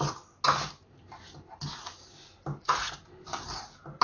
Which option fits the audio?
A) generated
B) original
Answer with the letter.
B